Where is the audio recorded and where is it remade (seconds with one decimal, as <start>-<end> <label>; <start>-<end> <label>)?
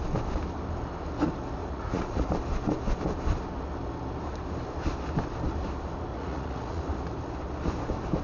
0.0-1.6 recorded; 1.6-2.3 remade; 2.3-6.1 recorded; 6.1-6.8 remade; 6.8-8.2 recorded